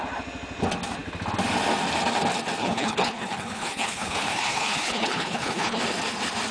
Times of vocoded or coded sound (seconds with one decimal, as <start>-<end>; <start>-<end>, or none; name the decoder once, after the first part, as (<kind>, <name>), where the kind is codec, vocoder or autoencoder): 2.6-5.8 (codec, HILCodec)